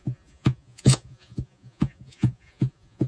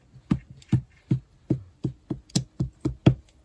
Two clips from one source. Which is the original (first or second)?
second